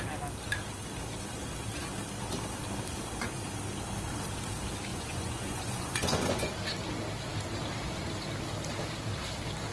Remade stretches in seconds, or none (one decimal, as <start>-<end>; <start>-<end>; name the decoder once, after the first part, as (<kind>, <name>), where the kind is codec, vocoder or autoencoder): 4.9-6.5 (vocoder, Vocos)